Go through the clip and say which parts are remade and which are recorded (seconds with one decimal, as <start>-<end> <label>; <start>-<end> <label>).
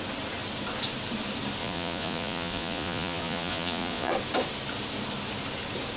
0.0-1.6 recorded; 1.6-4.1 remade; 4.1-6.0 recorded